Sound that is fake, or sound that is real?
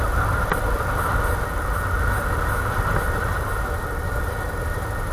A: real